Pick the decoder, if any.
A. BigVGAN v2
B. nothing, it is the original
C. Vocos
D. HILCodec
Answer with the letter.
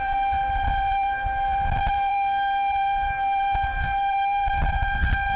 A